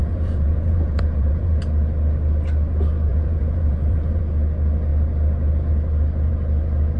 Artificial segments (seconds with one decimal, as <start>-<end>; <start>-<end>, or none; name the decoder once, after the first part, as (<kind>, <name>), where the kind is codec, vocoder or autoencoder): 0.0-1.6 (vocoder, Vocos); 3.1-4.2